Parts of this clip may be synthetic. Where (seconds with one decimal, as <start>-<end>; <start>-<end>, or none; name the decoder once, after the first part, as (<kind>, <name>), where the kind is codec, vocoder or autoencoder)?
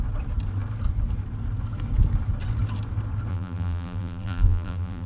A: 3.3-5.1 (vocoder, BigVGAN v2)